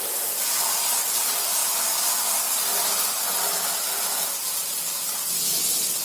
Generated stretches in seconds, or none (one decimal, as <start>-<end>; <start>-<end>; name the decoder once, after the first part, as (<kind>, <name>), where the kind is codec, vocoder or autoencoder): none